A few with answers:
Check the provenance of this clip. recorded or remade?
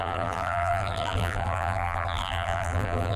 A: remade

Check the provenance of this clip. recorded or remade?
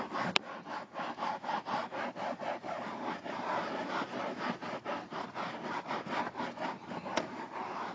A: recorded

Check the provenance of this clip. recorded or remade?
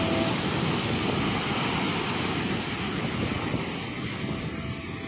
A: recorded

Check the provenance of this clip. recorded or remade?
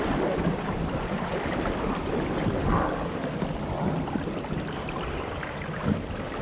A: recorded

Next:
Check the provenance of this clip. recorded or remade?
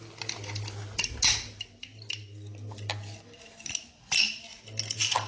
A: recorded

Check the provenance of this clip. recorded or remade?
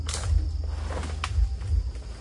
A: recorded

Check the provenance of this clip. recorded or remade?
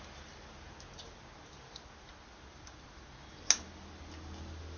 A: recorded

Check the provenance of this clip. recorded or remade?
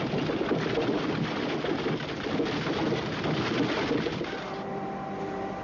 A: recorded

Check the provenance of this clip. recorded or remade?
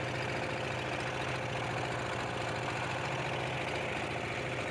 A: recorded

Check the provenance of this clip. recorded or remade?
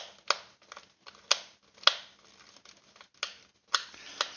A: recorded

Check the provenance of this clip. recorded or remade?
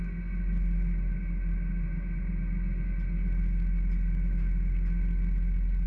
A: recorded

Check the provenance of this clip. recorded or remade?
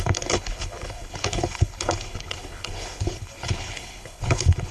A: remade